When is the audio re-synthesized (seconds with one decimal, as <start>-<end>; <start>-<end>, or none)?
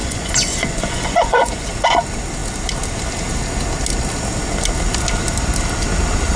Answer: 0.0-1.7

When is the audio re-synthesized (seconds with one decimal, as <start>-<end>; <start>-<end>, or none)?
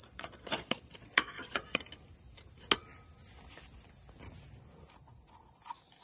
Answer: 0.0-1.8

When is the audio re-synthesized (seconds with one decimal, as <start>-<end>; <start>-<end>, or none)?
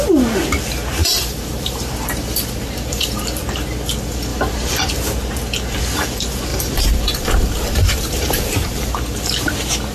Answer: 1.0-3.2; 4.3-4.9; 6.5-8.9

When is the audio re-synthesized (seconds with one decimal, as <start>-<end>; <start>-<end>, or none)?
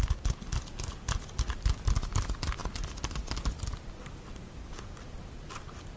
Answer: none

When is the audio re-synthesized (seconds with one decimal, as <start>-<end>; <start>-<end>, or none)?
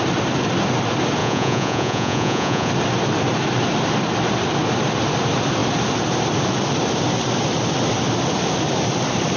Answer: 1.2-2.7